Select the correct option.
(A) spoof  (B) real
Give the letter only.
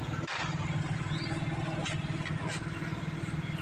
B